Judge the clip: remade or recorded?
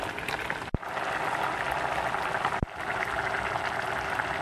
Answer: recorded